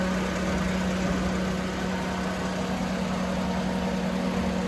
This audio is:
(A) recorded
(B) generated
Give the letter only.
A